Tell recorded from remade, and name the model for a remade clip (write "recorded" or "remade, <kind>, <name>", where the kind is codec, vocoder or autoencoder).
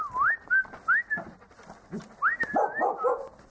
recorded